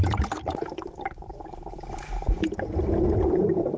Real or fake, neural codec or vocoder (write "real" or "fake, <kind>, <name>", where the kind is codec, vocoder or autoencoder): fake, vocoder, BigVGAN v2